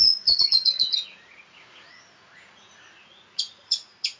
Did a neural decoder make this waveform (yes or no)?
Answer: yes